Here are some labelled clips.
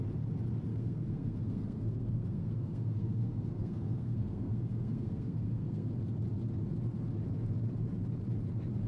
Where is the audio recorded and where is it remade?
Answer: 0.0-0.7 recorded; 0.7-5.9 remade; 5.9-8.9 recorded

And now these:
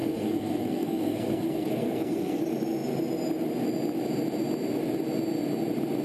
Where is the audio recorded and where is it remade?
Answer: 0.0-2.4 remade; 2.4-6.0 recorded

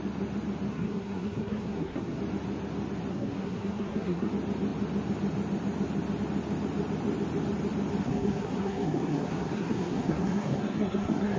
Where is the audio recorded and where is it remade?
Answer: 0.0-0.7 recorded; 0.7-2.2 remade; 2.2-3.1 recorded; 3.1-4.3 remade; 4.3-8.0 recorded; 8.0-11.4 remade

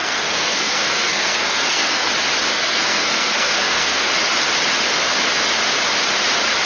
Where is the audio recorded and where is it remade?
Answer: 0.0-2.1 remade; 2.1-2.5 recorded; 2.5-4.1 remade; 4.1-6.7 recorded

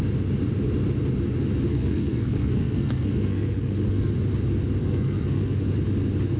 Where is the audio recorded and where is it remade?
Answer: 0.0-1.7 recorded; 1.7-4.1 remade; 4.1-4.8 recorded; 4.8-5.6 remade; 5.6-6.4 recorded

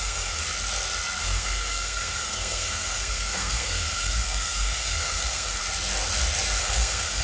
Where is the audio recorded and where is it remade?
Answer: 0.0-0.4 remade; 0.4-1.2 recorded; 1.2-5.6 remade; 5.6-6.6 recorded; 6.6-7.2 remade

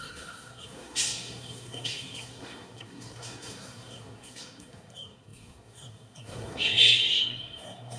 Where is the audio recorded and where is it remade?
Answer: 0.0-8.0 remade